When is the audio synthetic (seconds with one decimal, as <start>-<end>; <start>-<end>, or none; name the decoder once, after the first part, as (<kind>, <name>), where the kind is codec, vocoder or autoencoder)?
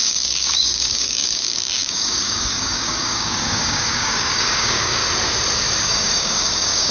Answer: 0.0-5.0 (codec, DAC); 5.8-6.9